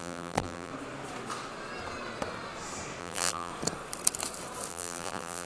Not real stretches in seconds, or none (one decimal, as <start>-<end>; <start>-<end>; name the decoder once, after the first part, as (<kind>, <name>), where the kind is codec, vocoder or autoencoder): 0.0-0.7 (vocoder, BigVGAN v2); 3.0-3.5; 4.7-5.5